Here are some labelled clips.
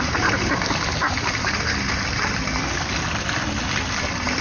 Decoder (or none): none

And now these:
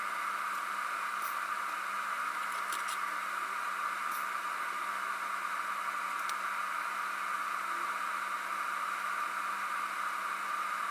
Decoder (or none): none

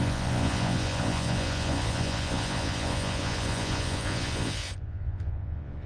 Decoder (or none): vocoder, Vocos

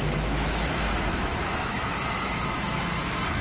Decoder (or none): autoencoder, DAC-VAE